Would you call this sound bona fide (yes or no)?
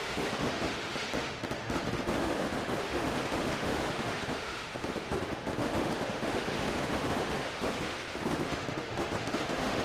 no